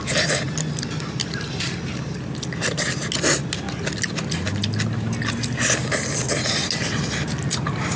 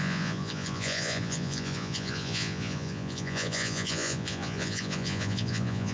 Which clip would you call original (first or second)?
first